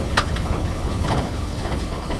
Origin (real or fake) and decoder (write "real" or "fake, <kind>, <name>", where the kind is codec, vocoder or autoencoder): fake, codec, HILCodec